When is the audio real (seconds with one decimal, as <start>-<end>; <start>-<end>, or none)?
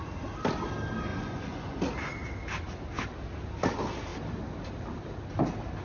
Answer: 0.0-1.1; 1.8-5.8